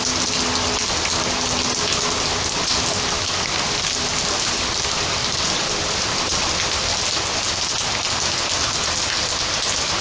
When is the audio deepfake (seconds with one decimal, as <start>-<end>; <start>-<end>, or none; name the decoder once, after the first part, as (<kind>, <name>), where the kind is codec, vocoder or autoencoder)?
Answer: none